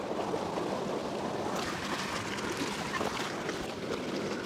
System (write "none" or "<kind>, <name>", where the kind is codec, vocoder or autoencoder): none